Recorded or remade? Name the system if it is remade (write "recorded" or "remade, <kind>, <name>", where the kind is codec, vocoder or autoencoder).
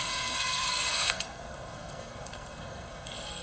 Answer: remade, codec, SNAC